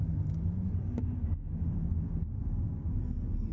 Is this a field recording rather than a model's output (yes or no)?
yes